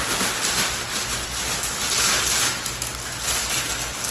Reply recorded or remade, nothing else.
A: recorded